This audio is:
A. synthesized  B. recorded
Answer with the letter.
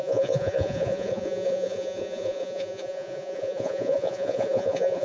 A